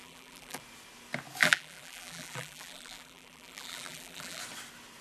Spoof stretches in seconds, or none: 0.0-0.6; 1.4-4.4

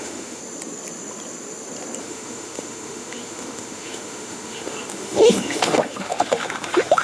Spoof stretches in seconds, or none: 0.0-0.4; 2.0-7.0